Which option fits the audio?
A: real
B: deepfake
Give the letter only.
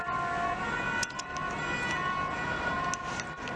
A